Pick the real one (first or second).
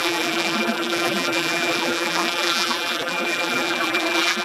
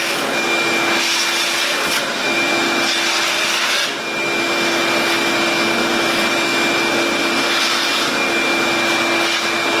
second